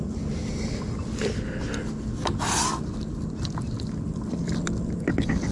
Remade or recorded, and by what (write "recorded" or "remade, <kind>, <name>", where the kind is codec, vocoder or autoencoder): recorded